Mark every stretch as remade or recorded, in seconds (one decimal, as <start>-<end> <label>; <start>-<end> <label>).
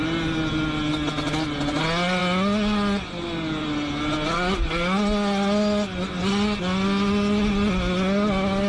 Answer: 0.0-8.7 recorded